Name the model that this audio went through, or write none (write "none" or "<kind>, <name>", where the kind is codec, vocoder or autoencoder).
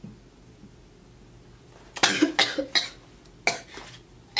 none